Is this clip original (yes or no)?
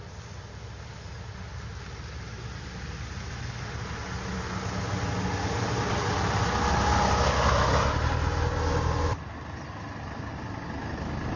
yes